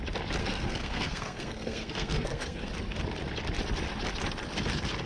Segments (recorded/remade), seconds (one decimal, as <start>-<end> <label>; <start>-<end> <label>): 0.0-0.4 recorded; 0.4-2.7 remade; 2.7-5.1 recorded